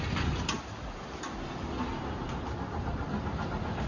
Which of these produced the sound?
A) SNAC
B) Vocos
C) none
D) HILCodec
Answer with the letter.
C